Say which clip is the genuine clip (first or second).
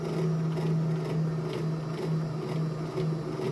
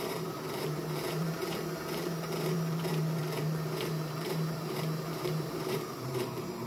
first